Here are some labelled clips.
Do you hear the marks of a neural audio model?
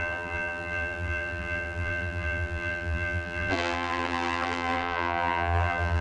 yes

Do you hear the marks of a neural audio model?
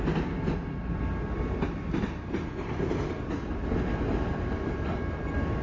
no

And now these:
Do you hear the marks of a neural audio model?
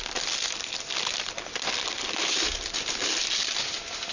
no